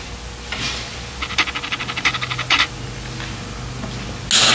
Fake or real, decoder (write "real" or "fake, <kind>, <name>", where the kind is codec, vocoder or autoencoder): real